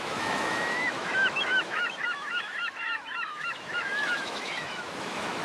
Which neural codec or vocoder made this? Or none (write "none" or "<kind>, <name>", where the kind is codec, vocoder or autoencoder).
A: autoencoder, DAC-VAE